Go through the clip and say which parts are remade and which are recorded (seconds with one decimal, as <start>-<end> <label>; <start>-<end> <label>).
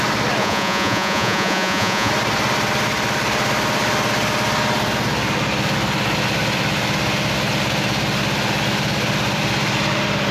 0.0-0.4 recorded; 0.4-2.1 remade; 2.1-10.3 recorded